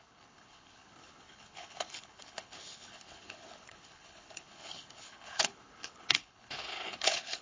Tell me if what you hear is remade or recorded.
remade